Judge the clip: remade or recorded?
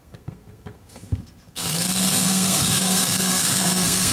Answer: remade